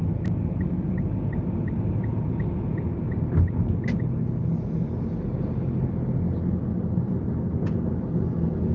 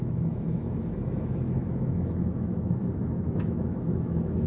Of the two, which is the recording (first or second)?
first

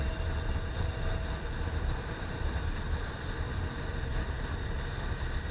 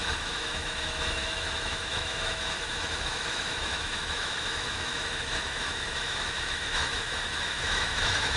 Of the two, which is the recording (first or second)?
first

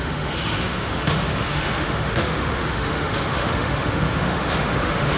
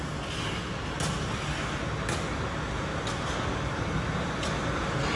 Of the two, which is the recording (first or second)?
second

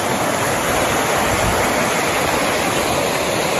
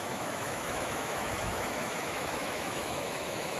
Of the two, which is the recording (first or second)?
first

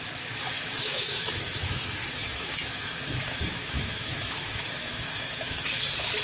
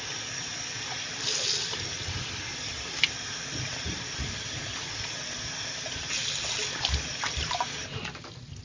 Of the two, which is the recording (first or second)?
second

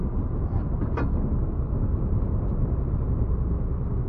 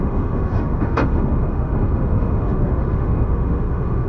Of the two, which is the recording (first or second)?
first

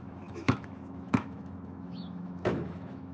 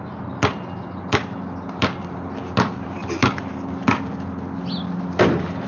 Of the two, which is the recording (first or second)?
second